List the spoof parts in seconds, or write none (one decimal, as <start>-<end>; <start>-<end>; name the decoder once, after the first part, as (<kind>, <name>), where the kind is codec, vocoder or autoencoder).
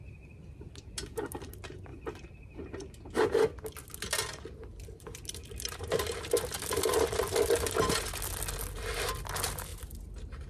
0.0-1.5 (vocoder, BigVGAN v2); 4.7-7.2; 9.7-10.5